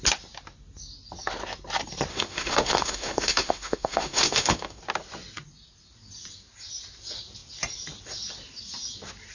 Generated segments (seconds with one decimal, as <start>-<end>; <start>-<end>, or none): 2.1-4.8